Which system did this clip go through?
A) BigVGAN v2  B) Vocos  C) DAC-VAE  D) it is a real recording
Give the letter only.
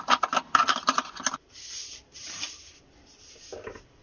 A